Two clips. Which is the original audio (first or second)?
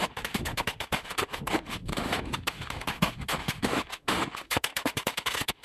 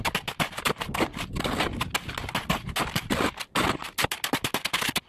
second